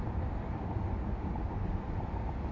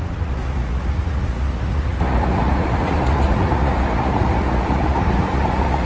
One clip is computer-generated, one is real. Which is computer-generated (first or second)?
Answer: second